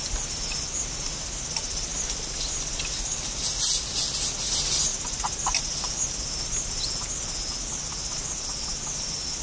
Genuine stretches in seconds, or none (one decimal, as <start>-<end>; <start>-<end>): 0.0-4.9; 6.0-9.4